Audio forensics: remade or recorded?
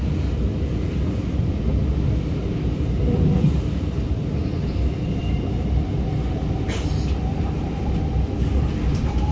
recorded